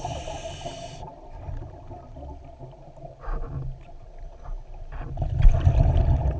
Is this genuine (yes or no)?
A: yes